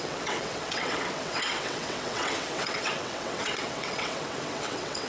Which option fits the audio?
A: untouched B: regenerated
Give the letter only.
B